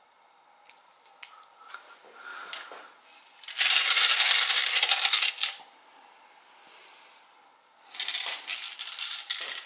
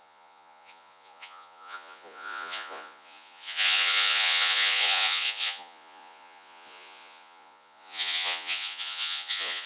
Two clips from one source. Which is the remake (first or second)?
second